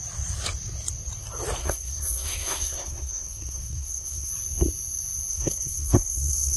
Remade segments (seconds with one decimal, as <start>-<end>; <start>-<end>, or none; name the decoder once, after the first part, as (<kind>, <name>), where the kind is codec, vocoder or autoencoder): 1.6-4.3 (codec, SNAC); 5.3-6.6